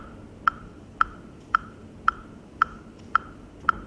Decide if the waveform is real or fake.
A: fake